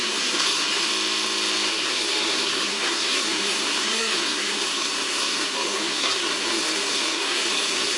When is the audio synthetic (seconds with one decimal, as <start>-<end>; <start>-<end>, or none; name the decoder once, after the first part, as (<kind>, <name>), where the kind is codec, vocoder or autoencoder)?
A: 0.0-0.9 (codec, SNAC); 1.7-8.0